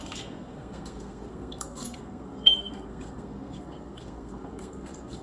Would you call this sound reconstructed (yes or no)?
yes